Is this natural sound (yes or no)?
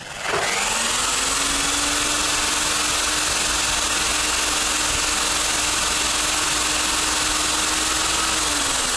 yes